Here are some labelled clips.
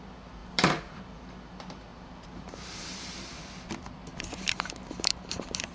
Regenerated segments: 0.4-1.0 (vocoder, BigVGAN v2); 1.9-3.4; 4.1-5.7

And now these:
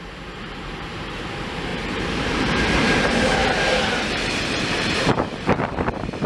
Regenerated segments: 0.0-3.4 (vocoder, BigVGAN v2); 4.0-6.3

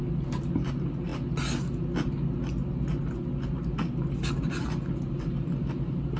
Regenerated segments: none

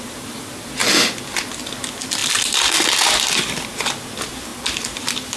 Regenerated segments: none